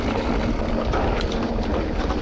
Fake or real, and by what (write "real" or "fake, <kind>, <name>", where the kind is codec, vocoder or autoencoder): real